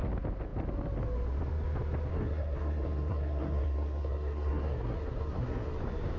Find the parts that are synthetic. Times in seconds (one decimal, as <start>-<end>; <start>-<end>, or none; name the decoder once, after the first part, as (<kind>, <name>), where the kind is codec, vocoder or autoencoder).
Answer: 2.1-5.8 (codec, SNAC)